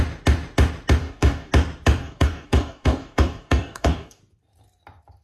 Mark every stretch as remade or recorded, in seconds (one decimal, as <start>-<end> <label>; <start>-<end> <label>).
0.0-1.0 recorded; 1.0-1.5 remade; 1.5-2.0 recorded; 2.0-4.2 remade; 4.2-5.2 recorded